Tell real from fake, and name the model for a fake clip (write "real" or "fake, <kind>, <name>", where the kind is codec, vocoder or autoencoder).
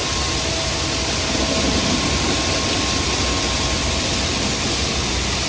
real